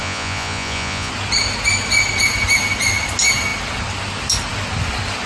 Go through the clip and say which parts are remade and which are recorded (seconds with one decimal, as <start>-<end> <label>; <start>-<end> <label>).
0.0-1.1 remade; 1.1-5.3 recorded